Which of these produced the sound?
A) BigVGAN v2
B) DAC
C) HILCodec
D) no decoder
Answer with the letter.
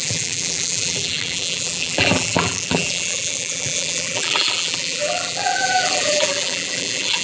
A